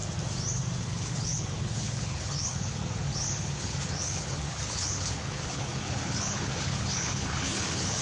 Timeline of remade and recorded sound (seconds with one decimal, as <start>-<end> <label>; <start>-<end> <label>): 0.0-0.8 recorded; 0.8-8.0 remade